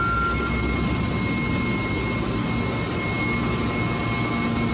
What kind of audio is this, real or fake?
real